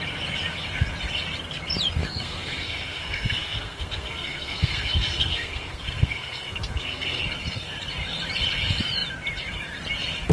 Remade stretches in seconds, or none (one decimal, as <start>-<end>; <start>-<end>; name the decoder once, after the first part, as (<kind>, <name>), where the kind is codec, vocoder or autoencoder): 2.0-7.2 (codec, SNAC)